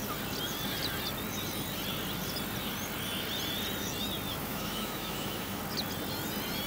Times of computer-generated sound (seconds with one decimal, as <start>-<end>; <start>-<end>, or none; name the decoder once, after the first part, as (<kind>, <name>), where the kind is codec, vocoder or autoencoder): 4.4-5.6 (autoencoder, DAC-VAE)